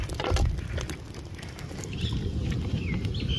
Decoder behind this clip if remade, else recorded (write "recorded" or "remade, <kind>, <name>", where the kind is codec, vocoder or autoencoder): recorded